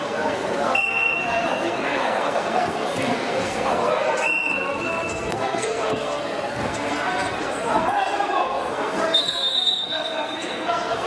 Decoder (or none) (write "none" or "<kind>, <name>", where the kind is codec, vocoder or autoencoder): codec, SNAC